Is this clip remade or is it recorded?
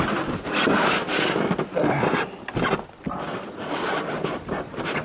remade